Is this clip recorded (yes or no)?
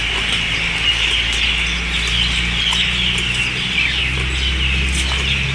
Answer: yes